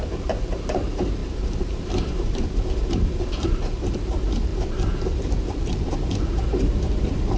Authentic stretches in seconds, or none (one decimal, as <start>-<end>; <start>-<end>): none

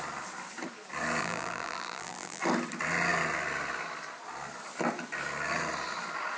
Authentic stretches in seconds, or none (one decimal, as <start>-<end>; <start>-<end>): 0.0-1.2; 2.4-6.4

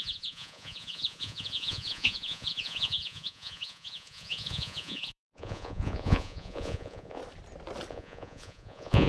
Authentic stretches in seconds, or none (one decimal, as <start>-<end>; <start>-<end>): 7.2-7.9

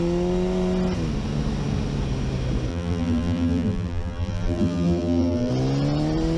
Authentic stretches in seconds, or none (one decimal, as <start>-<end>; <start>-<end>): 0.0-2.7; 5.5-6.4

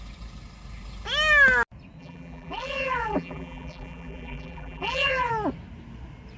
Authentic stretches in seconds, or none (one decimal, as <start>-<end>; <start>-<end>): 0.0-2.0; 5.3-6.4